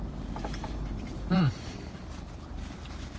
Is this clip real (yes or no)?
no